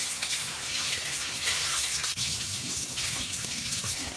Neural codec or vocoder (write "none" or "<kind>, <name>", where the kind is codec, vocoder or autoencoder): codec, SNAC